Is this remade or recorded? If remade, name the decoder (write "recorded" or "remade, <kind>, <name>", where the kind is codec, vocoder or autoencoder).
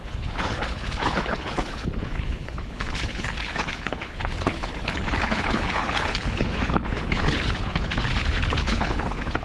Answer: remade, codec, HILCodec